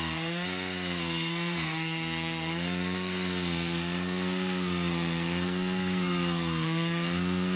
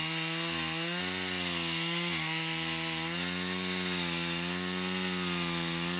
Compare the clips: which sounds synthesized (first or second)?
first